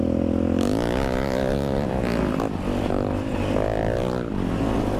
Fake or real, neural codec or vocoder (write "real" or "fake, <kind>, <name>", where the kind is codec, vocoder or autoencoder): real